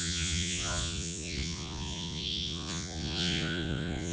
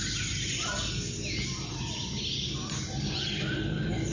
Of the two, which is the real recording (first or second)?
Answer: second